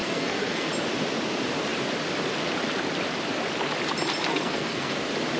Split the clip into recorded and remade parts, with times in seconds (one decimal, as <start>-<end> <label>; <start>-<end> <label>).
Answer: 0.0-0.7 remade; 0.7-4.3 recorded; 4.3-5.0 remade; 5.0-5.4 recorded